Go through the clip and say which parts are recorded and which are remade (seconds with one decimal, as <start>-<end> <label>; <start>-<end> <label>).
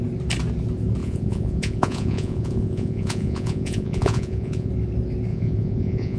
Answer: 0.0-1.0 recorded; 1.0-4.7 remade; 4.7-5.3 recorded; 5.3-6.2 remade